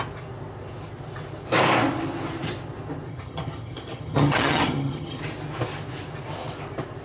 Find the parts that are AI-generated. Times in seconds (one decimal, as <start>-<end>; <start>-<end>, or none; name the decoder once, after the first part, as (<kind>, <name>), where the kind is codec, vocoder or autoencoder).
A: 3.1-5.2 (vocoder, HiFi-GAN)